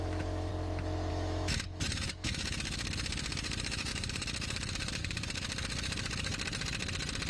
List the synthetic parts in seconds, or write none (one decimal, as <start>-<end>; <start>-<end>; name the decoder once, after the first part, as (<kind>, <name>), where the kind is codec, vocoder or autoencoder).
0.0-0.5 (autoencoder, DAC-VAE); 1.1-6.3